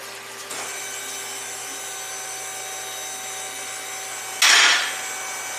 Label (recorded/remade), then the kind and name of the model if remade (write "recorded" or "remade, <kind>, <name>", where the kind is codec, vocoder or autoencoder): recorded